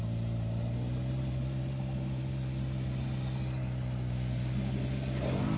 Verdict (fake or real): real